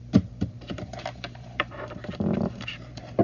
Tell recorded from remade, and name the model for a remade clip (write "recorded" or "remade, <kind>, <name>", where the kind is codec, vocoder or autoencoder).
remade, vocoder, BigVGAN v2